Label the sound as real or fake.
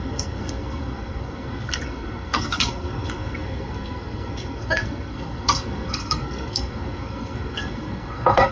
fake